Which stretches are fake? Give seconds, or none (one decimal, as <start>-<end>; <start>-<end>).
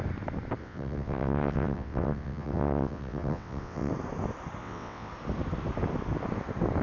0.6-3.9; 4.6-5.1